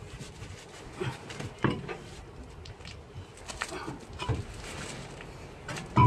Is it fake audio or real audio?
real